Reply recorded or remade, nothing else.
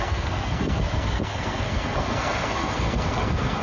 remade